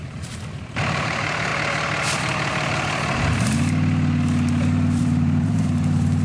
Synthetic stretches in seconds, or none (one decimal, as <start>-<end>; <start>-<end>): 0.0-1.5; 5.0-6.2